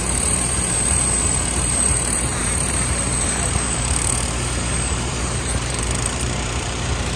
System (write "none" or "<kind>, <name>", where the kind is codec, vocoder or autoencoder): vocoder, BigVGAN v2